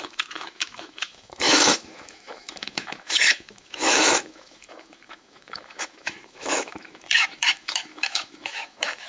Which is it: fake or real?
fake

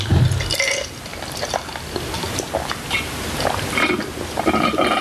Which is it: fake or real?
real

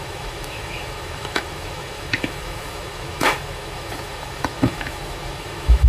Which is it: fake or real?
fake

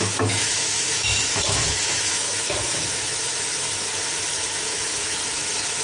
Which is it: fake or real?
fake